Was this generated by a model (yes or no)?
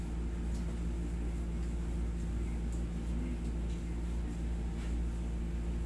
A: no